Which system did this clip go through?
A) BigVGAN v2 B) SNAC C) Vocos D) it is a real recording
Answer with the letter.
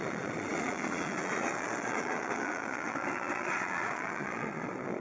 C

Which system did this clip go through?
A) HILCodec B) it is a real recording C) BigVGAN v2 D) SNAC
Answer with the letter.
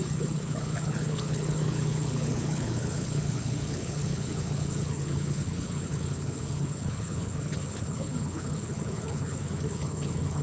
A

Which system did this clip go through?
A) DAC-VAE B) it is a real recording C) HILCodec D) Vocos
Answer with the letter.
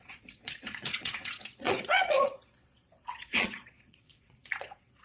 D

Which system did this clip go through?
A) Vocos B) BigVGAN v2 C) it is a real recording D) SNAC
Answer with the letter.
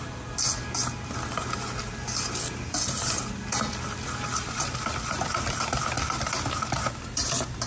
C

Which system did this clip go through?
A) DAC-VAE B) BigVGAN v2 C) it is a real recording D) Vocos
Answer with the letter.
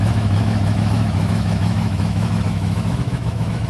A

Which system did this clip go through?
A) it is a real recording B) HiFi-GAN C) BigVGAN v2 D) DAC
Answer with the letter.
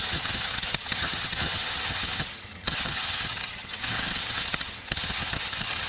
B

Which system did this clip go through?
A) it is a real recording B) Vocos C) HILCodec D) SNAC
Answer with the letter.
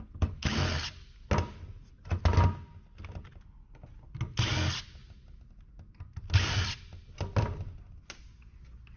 A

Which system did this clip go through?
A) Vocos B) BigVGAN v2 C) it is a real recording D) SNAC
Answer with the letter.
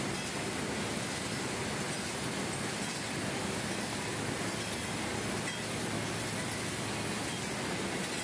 C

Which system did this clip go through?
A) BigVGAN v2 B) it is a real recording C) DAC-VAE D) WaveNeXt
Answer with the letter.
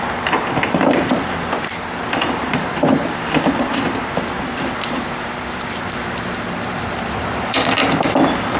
A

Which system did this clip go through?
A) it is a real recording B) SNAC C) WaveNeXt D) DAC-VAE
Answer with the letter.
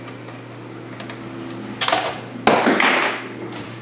A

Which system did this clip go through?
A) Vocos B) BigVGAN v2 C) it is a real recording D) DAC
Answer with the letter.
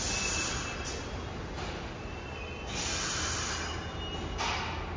C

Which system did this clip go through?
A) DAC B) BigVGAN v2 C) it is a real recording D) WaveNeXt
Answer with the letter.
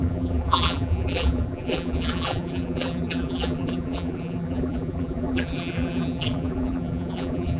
B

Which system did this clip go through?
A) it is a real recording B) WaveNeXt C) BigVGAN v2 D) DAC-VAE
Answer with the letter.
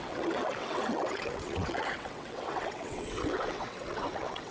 B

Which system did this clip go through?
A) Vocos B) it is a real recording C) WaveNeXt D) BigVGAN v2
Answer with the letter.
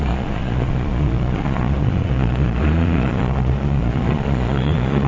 A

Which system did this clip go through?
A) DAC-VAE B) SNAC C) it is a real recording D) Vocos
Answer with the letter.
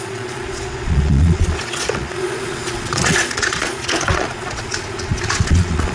D